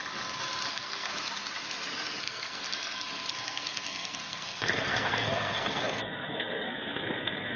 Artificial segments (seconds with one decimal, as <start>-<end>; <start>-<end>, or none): 0.7-1.1; 2.2-7.6